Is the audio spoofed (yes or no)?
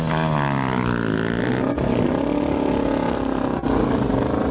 no